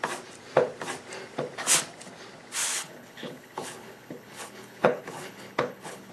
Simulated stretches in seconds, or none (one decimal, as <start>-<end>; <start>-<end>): 2.7-6.1